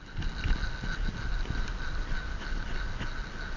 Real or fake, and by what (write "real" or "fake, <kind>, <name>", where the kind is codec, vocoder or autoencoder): real